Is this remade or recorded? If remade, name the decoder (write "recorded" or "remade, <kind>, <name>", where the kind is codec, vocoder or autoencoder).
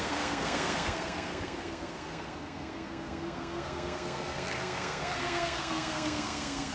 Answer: remade, codec, SNAC